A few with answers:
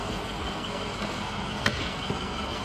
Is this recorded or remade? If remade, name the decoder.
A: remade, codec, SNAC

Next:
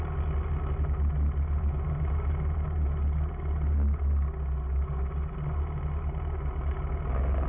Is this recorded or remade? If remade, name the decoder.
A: recorded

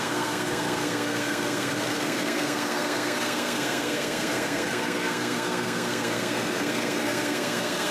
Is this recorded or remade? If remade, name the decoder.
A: remade, codec, SNAC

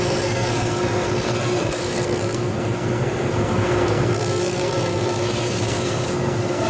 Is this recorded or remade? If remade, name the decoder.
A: remade, codec, SNAC